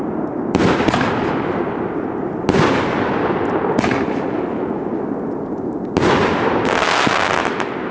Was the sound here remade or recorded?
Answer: recorded